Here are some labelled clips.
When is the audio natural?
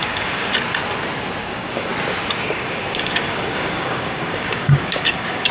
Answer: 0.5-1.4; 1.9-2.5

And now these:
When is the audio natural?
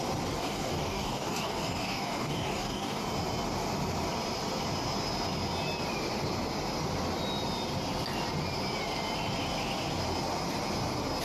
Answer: 0.0-0.4; 3.0-11.2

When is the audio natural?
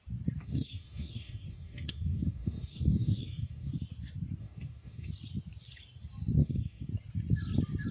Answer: 0.0-0.4; 3.7-4.4; 5.1-6.4; 6.9-7.9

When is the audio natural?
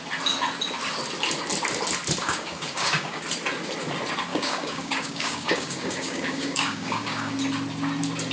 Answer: 0.0-2.2; 3.2-4.3; 7.3-8.3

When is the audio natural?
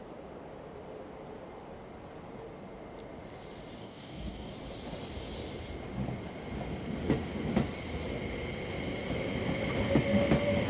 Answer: 0.0-3.8; 4.5-10.7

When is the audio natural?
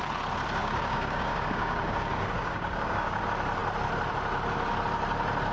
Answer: 0.0-0.6; 3.2-5.5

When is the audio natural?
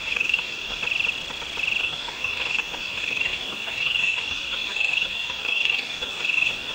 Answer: 0.8-1.8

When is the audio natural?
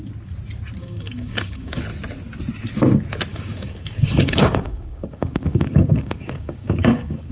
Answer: 0.0-0.8; 1.8-3.3